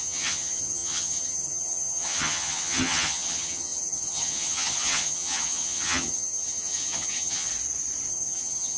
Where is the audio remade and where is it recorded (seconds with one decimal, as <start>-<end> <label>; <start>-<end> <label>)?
0.0-7.5 remade; 7.5-8.1 recorded; 8.1-8.8 remade